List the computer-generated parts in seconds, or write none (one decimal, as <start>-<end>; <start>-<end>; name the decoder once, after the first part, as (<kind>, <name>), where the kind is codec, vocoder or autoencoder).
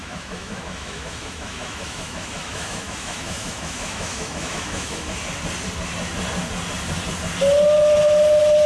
0.0-5.2 (autoencoder, DAC-VAE)